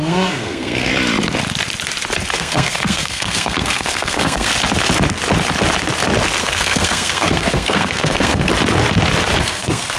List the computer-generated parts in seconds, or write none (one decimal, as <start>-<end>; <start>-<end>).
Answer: 0.0-0.9; 2.3-4.5; 6.4-8.5; 9.4-10.0